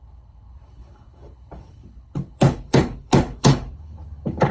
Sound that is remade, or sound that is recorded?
remade